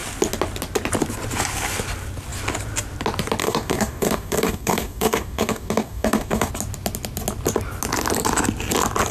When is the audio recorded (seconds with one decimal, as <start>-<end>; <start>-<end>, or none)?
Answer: 0.0-3.4; 6.5-9.1